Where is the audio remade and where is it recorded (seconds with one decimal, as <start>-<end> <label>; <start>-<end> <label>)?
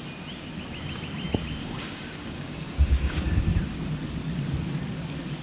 0.0-1.6 recorded; 1.6-3.4 remade; 3.4-5.4 recorded